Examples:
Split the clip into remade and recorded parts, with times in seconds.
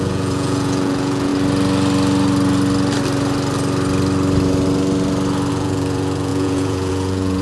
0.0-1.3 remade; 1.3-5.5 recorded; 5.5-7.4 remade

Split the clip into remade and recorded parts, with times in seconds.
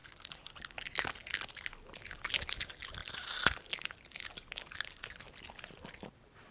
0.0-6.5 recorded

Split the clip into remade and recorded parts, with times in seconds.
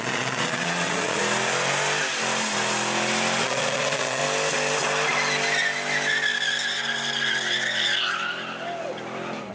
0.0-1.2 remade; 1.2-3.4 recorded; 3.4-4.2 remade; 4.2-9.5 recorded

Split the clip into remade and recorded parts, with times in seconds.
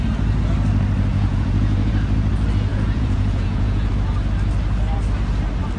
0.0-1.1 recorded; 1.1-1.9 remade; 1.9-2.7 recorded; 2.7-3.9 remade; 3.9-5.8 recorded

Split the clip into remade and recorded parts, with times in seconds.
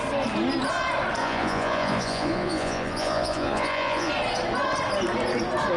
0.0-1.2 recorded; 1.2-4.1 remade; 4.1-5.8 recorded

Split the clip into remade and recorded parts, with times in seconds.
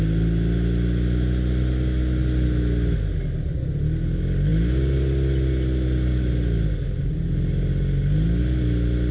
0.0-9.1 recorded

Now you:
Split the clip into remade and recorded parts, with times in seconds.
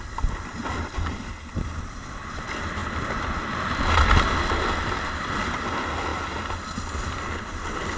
0.0-8.0 recorded